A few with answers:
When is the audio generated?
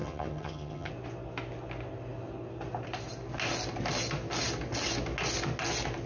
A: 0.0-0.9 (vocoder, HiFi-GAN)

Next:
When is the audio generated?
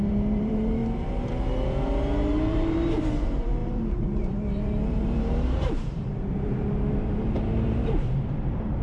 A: 0.0-0.8 (vocoder, BigVGAN v2); 2.3-8.8